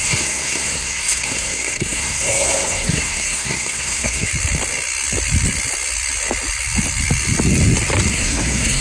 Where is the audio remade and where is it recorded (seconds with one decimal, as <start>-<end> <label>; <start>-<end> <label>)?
0.0-4.3 remade; 4.3-8.1 recorded; 8.1-8.8 remade